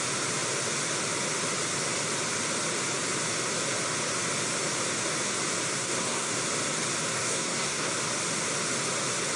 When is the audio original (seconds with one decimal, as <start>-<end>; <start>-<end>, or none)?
0.0-5.7; 6.3-7.1; 7.9-9.4